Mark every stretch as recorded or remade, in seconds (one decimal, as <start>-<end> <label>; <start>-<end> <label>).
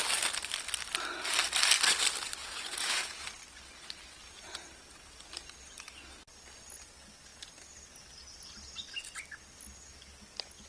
0.0-2.4 recorded; 2.4-3.2 remade; 3.2-4.2 recorded; 4.2-4.8 remade; 4.8-10.7 recorded